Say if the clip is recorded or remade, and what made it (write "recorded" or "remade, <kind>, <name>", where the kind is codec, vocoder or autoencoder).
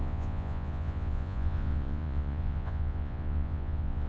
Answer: remade, vocoder, Vocos